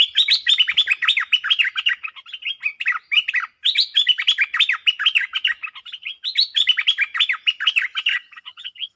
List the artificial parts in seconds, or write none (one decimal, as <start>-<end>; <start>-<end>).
8.1-9.0